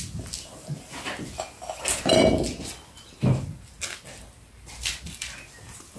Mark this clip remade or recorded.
recorded